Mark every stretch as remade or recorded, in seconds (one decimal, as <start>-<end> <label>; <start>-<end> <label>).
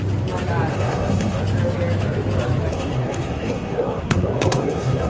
0.0-0.7 recorded; 0.7-1.4 remade; 1.4-2.7 recorded; 2.7-5.1 remade